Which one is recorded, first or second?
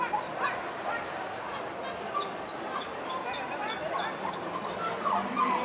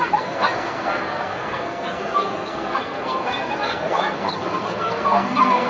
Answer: first